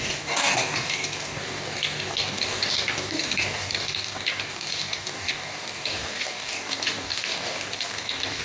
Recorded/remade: remade